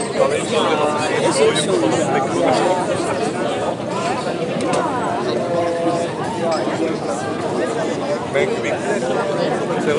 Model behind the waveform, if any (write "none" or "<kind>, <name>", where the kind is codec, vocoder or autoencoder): none